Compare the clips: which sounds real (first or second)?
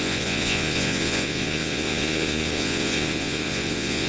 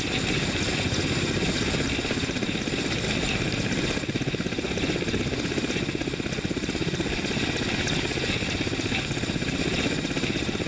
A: second